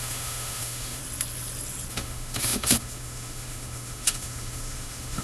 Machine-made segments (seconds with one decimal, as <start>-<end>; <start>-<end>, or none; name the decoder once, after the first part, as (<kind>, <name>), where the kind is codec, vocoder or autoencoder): 0.0-1.0 (autoencoder, DAC-VAE); 1.9-5.2